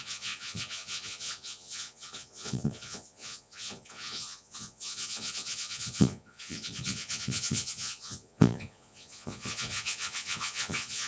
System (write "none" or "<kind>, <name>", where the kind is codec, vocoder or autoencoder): vocoder, Vocos